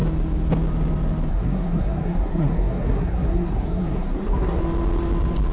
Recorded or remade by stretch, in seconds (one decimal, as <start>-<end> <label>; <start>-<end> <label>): 0.0-1.3 recorded; 1.3-4.6 remade; 4.6-5.5 recorded